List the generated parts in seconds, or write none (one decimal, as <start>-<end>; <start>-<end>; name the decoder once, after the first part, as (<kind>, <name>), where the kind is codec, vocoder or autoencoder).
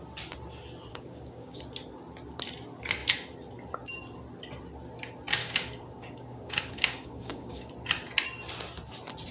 0.9-1.6 (codec, DAC); 5.4-7.7